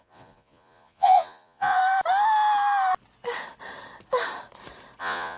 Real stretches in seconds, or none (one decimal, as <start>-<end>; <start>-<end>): 1.8-5.0